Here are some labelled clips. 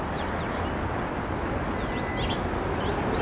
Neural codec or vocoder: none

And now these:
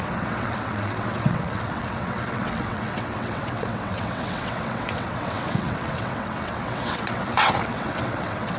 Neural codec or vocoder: vocoder, WaveNeXt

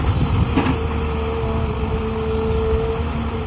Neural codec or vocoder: none